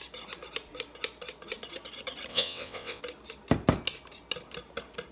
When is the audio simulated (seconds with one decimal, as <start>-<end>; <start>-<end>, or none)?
2.3-3.0